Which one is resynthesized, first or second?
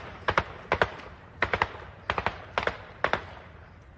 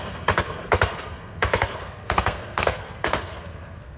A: second